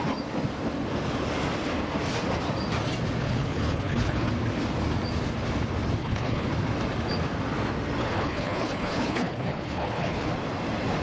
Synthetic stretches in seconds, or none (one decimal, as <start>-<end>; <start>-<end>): 3.2-4.3; 6.0-6.5; 8.0-10.3